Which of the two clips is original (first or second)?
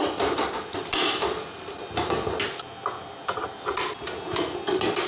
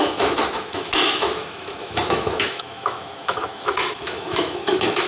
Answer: first